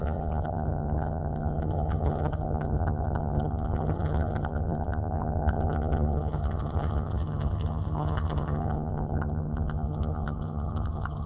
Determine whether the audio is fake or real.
fake